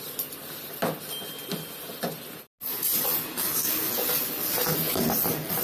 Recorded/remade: recorded